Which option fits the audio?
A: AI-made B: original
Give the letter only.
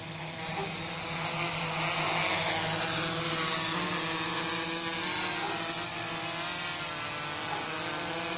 B